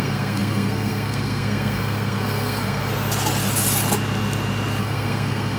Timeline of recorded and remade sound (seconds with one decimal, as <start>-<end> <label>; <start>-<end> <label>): 0.0-2.9 remade; 2.9-4.8 recorded; 4.8-5.6 remade